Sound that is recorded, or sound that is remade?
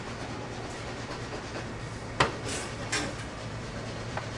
recorded